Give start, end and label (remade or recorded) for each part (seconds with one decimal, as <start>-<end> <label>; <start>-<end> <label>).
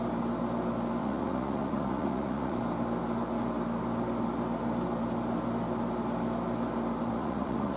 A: 0.0-1.0 recorded; 1.0-2.6 remade; 2.6-7.1 recorded; 7.1-7.8 remade